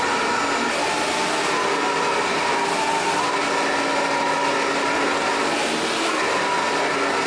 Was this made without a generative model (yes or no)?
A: yes